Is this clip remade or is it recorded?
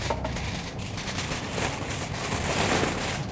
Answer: recorded